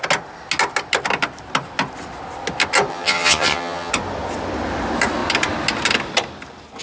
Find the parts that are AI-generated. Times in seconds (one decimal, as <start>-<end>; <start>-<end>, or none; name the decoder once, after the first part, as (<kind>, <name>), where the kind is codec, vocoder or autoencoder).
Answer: 2.9-3.9 (vocoder, HiFi-GAN)